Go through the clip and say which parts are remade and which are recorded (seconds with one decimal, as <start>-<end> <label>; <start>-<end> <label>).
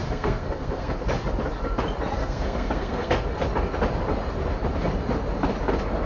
0.0-0.9 remade; 0.9-2.2 recorded; 2.2-3.1 remade; 3.1-6.1 recorded